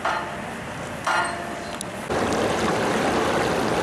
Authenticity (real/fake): real